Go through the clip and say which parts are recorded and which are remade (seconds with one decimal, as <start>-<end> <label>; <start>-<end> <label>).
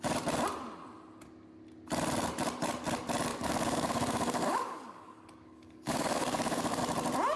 0.0-3.3 recorded; 3.3-6.8 remade; 6.8-7.4 recorded